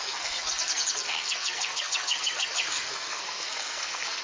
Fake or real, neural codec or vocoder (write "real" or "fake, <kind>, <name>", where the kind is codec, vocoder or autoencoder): fake, codec, SNAC